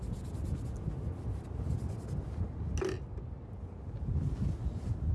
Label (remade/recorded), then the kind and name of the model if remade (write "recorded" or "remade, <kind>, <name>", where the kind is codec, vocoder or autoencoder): recorded